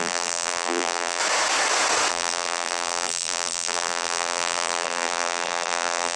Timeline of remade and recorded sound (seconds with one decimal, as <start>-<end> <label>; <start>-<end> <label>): 0.0-1.2 remade; 1.2-2.1 recorded; 2.1-6.2 remade